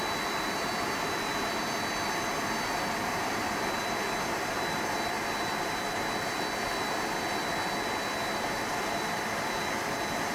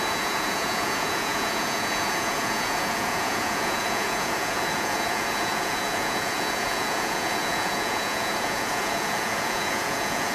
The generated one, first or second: second